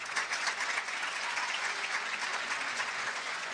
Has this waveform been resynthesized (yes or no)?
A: yes